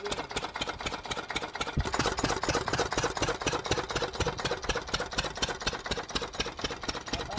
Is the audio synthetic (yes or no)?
no